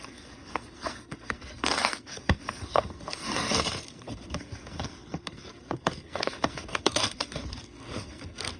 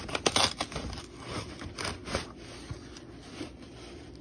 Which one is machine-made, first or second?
first